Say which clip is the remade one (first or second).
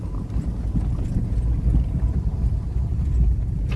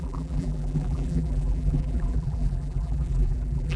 second